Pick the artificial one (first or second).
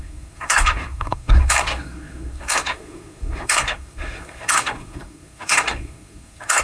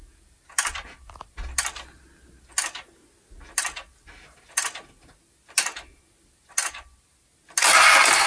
first